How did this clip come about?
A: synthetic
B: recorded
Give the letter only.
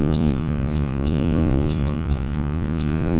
A